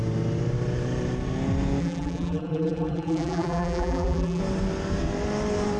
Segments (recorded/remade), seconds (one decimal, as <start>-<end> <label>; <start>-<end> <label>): 0.0-1.8 recorded; 1.8-4.4 remade; 4.4-5.8 recorded